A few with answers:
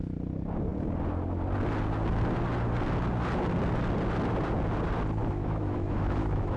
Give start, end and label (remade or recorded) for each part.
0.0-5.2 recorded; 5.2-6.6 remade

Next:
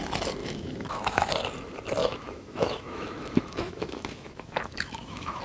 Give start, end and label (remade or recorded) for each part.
0.0-0.4 recorded; 0.4-1.3 remade; 1.3-2.0 recorded; 2.0-5.4 remade

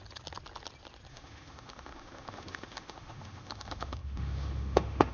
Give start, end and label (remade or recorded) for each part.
0.0-1.1 recorded; 1.1-5.1 remade

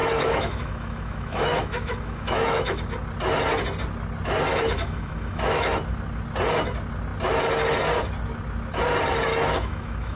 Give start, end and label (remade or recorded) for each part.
0.0-2.8 remade; 2.8-4.5 recorded; 4.5-5.8 remade; 5.8-9.3 recorded; 9.3-10.2 remade